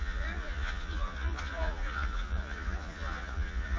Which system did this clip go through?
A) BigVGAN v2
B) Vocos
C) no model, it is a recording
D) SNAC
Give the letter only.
B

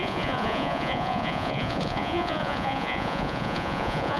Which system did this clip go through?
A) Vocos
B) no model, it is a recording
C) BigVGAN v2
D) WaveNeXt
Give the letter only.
A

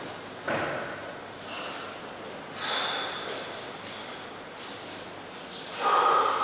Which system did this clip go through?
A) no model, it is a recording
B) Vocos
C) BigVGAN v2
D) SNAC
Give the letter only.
A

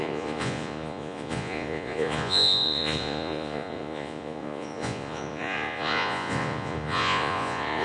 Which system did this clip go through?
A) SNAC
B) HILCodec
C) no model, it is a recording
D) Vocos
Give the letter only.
D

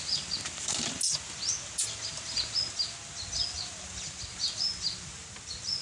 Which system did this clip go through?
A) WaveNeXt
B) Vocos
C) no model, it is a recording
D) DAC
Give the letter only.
C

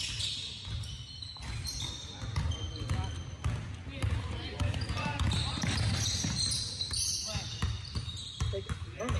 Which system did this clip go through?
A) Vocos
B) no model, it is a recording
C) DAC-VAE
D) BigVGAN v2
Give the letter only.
B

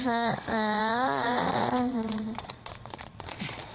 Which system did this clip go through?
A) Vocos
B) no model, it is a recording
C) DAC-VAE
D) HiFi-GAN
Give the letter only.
A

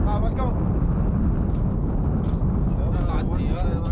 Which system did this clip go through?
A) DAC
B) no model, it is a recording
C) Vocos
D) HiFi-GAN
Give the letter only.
B